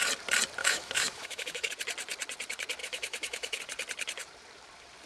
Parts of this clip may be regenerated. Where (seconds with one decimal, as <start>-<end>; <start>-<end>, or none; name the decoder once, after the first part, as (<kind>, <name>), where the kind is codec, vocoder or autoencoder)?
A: 0.6-1.7 (autoencoder, DAC-VAE); 2.8-3.6